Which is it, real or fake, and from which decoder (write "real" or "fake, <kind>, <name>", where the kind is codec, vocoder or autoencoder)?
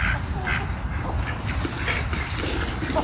real